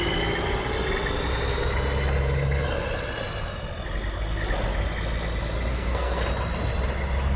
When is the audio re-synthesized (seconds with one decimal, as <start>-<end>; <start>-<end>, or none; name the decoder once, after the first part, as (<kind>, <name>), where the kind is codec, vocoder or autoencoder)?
5.7-6.2 (codec, SNAC)